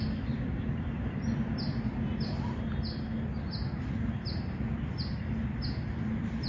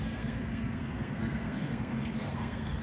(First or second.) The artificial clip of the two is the second